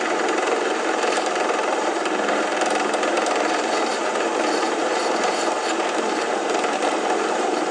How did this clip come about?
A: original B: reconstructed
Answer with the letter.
B